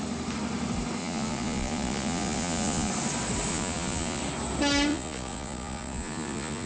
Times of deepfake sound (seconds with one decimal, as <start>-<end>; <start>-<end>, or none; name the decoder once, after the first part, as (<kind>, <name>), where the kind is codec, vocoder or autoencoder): 1.0-2.9 (vocoder, Vocos); 3.5-4.2; 4.9-6.7